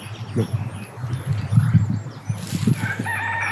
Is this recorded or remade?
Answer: recorded